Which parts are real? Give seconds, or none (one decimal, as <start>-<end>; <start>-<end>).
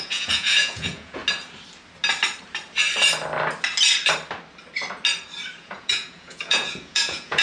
1.2-5.6